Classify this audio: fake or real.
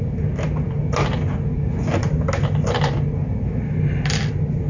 real